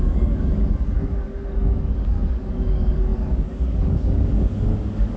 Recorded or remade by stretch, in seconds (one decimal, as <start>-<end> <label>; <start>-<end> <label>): 0.0-5.2 remade